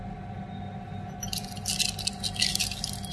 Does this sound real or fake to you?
real